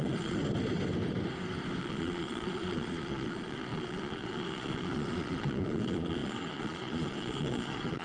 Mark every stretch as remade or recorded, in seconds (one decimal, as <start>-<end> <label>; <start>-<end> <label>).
0.0-0.4 remade; 0.4-1.8 recorded; 1.8-8.0 remade